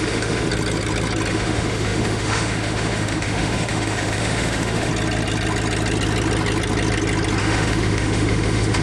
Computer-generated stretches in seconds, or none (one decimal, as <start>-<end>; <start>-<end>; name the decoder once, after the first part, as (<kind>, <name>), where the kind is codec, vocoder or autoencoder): 0.0-0.5 (autoencoder, DAC-VAE); 1.3-4.9; 7.4-8.8